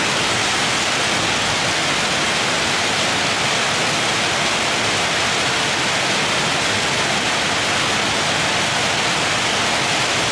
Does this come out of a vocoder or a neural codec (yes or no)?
no